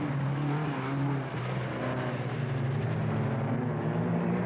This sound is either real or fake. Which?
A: real